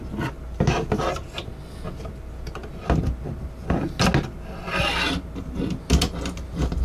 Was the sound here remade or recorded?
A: recorded